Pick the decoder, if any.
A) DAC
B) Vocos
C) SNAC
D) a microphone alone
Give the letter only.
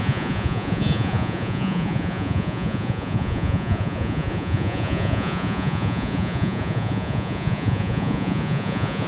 B